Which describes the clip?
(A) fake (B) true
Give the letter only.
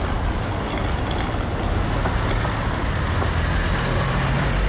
B